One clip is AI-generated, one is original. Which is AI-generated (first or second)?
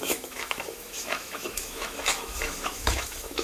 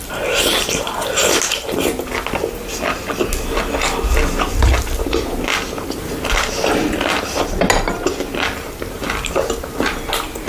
first